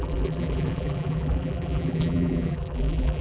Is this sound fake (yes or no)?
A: yes